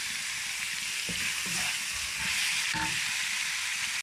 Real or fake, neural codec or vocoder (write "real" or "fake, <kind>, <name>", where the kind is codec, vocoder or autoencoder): real